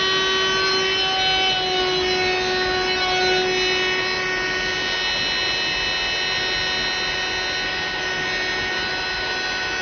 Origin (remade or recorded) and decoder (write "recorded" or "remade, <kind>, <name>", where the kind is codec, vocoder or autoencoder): recorded